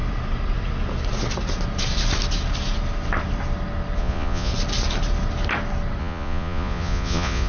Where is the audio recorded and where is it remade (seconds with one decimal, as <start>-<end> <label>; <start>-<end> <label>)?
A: 0.0-4.0 recorded; 4.0-4.5 remade; 4.5-6.0 recorded; 6.0-7.5 remade